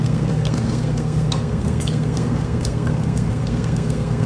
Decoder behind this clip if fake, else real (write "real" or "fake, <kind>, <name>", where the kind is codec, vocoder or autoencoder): fake, codec, SNAC